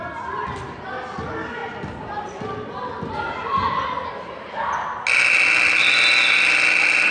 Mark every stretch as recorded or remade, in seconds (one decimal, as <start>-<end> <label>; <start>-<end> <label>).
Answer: 0.0-7.1 recorded